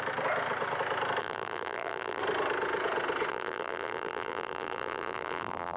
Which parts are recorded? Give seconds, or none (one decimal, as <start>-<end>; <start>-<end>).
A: 0.0-1.2; 2.2-3.3